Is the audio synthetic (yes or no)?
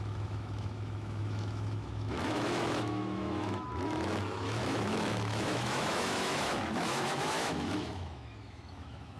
yes